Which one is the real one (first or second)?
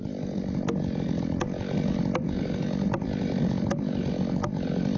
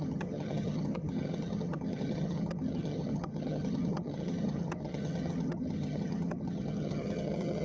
first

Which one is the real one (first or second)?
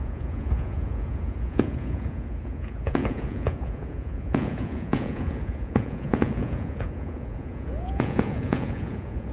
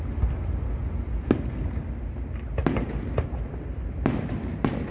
second